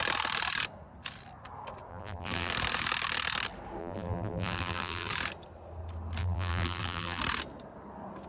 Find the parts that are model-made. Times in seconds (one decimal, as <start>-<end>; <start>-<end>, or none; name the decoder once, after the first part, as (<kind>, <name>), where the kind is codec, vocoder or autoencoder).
1.9-2.5 (vocoder, BigVGAN v2); 3.8-5.1; 6.2-7.2